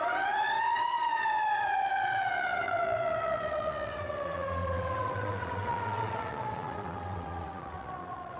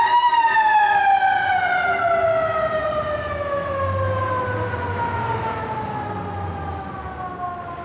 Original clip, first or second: second